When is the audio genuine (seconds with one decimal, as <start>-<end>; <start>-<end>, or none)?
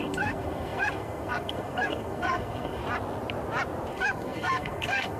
2.8-3.9